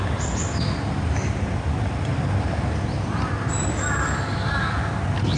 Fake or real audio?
real